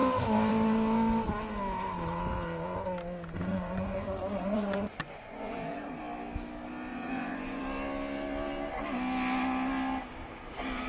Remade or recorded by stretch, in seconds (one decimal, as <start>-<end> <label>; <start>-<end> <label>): 0.0-3.5 recorded; 3.5-6.0 remade; 6.0-6.9 recorded; 6.9-7.6 remade; 7.6-10.9 recorded